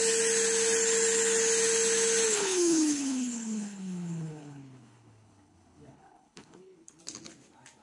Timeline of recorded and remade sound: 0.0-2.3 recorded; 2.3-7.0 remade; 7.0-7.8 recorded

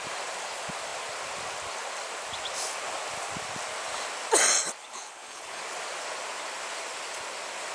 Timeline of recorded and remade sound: 0.0-4.8 recorded; 4.8-5.6 remade; 5.6-7.7 recorded

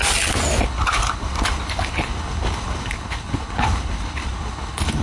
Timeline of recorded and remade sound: 0.0-0.6 recorded; 0.6-5.0 remade

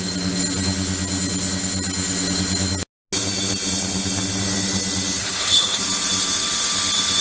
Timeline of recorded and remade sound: 0.0-5.2 recorded; 5.2-5.8 remade; 5.8-7.2 recorded

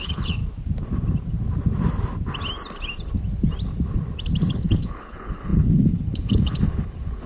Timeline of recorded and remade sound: 0.0-0.4 remade; 0.4-4.5 recorded; 4.5-7.3 remade

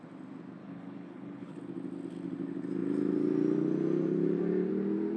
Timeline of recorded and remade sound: 0.0-0.6 recorded; 0.6-1.6 remade; 1.6-5.2 recorded

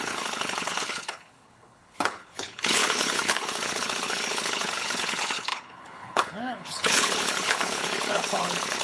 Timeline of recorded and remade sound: 0.0-8.8 remade

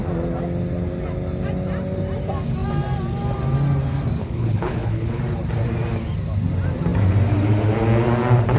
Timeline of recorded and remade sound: 0.0-4.2 recorded; 4.2-5.2 remade; 5.2-8.6 recorded